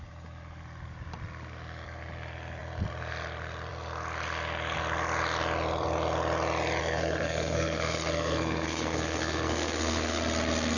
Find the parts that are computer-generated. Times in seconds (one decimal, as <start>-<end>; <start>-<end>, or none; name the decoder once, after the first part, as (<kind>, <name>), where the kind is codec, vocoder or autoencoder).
6.8-10.2 (codec, SNAC)